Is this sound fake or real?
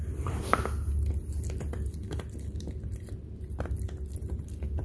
real